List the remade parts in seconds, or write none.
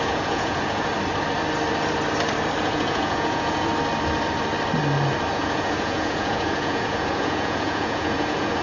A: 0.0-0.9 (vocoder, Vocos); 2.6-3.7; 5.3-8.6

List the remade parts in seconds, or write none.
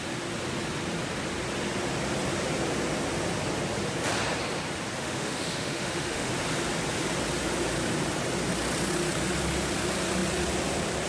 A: 5.0-6.3 (autoencoder, DAC-VAE)